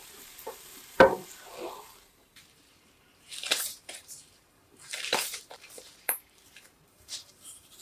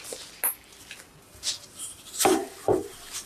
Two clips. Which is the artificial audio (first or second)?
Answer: first